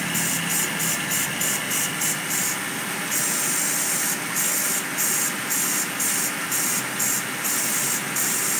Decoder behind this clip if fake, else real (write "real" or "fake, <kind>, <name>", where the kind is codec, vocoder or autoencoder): real